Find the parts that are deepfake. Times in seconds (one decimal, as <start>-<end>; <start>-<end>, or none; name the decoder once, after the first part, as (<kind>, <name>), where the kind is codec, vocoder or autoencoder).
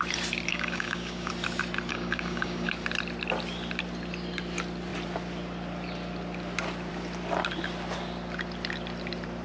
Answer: 0.5-1.3 (codec, DAC); 1.9-2.7